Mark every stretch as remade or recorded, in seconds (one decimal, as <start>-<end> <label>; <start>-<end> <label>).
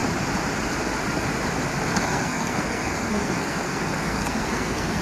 0.0-1.9 recorded; 1.9-5.0 remade